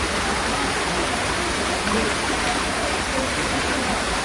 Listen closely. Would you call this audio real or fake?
fake